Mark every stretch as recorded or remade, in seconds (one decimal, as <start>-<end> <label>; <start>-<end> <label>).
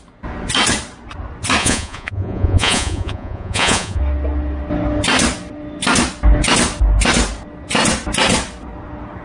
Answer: 0.0-1.6 recorded; 1.6-4.0 remade; 4.0-9.2 recorded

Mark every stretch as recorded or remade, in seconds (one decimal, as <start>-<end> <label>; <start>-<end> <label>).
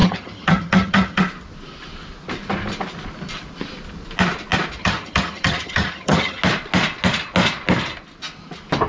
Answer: 0.0-1.2 remade; 1.2-4.8 recorded; 4.8-6.4 remade; 6.4-8.9 recorded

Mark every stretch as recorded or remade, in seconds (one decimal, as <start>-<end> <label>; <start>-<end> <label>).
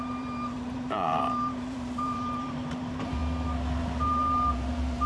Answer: 0.0-3.2 remade; 3.2-3.8 recorded; 3.8-5.1 remade